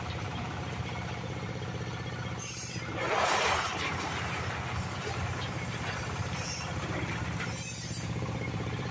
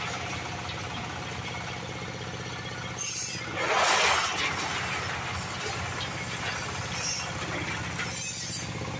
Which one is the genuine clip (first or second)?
second